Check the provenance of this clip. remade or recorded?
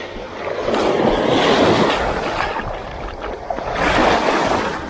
recorded